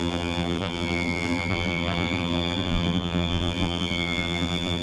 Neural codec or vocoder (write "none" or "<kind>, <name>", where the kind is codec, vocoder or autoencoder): vocoder, BigVGAN v2